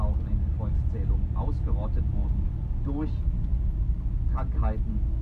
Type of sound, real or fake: real